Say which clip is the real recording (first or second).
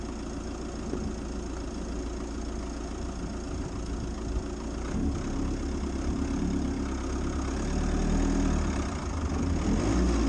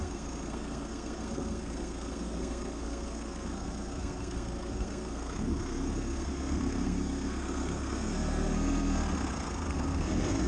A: first